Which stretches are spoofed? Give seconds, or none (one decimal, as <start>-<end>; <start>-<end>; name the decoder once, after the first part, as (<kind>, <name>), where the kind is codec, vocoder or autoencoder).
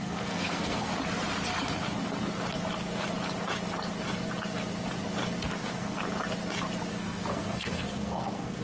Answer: 0.0-0.9 (codec, SNAC); 5.6-6.0; 6.9-8.6